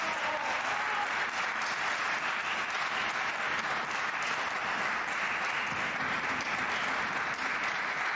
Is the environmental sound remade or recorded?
recorded